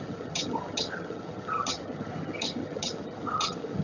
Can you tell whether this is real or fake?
fake